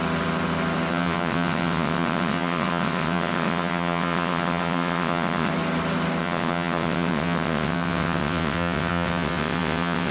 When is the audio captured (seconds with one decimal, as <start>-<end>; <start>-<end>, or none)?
0.0-0.9; 5.5-6.2